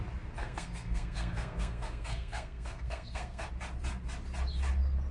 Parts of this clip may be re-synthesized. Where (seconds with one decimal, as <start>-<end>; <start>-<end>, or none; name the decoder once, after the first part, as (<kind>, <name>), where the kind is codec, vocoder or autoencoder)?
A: 0.4-3.5 (codec, SNAC)